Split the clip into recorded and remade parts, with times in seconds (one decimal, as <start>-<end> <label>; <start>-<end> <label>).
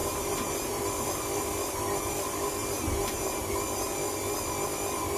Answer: 0.0-0.8 remade; 0.8-2.6 recorded; 2.6-3.5 remade; 3.5-5.2 recorded